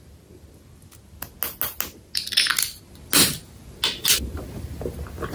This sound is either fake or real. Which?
real